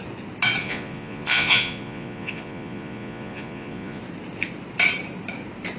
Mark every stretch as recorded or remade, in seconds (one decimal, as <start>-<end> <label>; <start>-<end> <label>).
0.0-0.6 recorded; 0.6-4.0 remade; 4.0-5.8 recorded